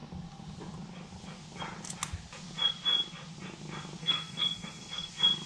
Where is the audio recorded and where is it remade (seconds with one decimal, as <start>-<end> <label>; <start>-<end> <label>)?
0.0-4.0 recorded; 4.0-5.1 remade; 5.1-5.5 recorded